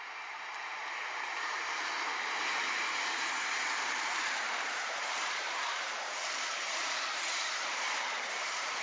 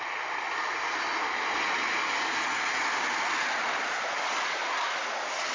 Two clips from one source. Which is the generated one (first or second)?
first